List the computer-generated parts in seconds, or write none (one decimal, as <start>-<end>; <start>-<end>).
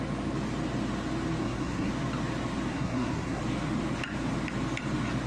1.4-1.9; 2.7-3.4